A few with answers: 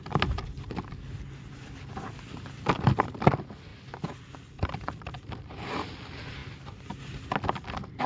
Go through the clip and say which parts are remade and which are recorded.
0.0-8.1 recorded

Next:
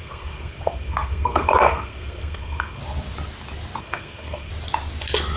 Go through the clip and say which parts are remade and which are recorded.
0.0-2.8 remade; 2.8-3.8 recorded; 3.8-4.5 remade; 4.5-5.4 recorded

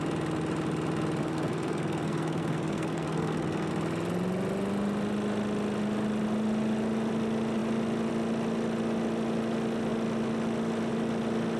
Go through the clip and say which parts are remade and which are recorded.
0.0-1.2 recorded; 1.2-3.7 remade; 3.7-11.6 recorded

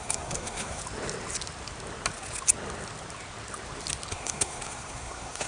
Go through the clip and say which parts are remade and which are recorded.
0.0-0.8 remade; 0.8-4.1 recorded; 4.1-5.5 remade

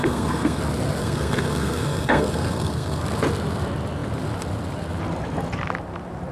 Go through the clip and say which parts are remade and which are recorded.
0.0-0.6 remade; 0.6-1.0 recorded; 1.0-3.0 remade; 3.0-6.3 recorded

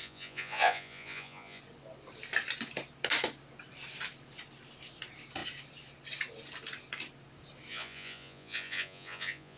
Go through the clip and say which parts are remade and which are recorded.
0.0-1.6 remade; 1.6-7.7 recorded; 7.7-9.6 remade

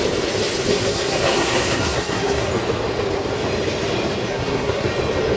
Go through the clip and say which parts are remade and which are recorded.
0.0-0.7 recorded; 0.7-2.5 remade; 2.5-4.3 recorded; 4.3-4.9 remade; 4.9-5.4 recorded

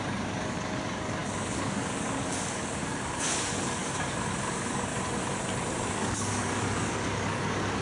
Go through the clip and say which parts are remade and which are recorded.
0.0-4.9 remade; 4.9-5.9 recorded; 5.9-7.8 remade